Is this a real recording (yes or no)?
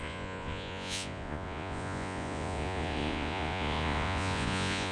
no